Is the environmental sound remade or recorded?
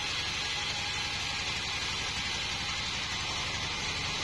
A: recorded